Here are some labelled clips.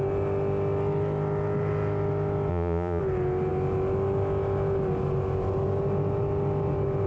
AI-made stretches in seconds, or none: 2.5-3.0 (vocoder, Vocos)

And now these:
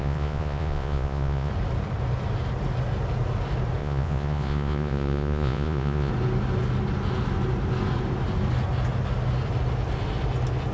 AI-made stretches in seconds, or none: 0.0-1.5 (vocoder, Vocos); 3.8-6.1

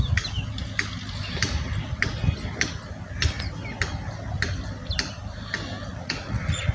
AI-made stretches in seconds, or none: 5.9-6.7 (vocoder, Vocos)